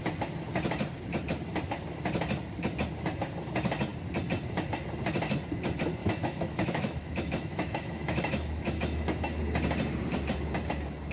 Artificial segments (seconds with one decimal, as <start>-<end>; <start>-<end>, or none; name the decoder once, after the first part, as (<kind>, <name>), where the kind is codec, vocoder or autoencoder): 6.0-9.4 (autoencoder, DAC-VAE)

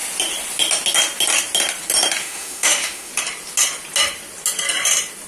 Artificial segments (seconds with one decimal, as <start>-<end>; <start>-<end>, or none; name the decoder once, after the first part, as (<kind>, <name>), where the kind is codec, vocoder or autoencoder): 2.2-3.1 (autoencoder, DAC-VAE)

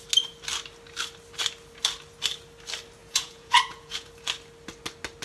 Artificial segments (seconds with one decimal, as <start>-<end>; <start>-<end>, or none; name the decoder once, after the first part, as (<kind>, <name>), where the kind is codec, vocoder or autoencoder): 3.0-4.1 (vocoder, Vocos)

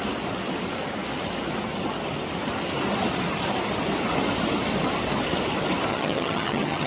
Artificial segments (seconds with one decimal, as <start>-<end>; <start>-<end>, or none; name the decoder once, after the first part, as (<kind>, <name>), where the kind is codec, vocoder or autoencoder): 5.9-6.9 (vocoder, HiFi-GAN)